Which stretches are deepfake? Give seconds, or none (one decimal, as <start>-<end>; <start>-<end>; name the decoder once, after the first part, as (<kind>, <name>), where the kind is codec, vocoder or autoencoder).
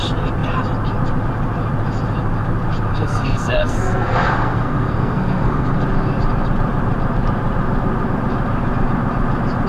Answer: 2.9-5.8 (codec, SNAC)